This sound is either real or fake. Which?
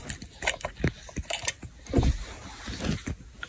real